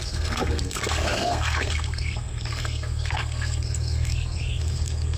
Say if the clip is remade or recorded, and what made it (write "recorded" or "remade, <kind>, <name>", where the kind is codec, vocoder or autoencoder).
remade, codec, SNAC